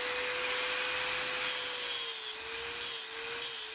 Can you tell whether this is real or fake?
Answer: real